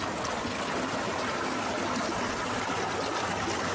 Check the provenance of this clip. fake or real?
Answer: real